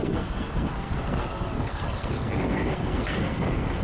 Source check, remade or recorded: remade